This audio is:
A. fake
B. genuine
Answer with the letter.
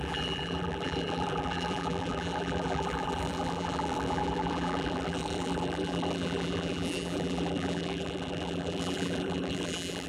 A